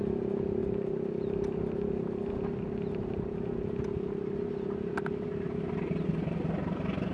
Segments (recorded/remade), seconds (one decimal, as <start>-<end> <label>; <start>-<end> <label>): 0.0-7.1 recorded